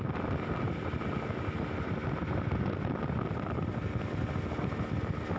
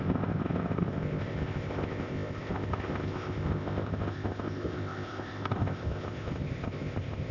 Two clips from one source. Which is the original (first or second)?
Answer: first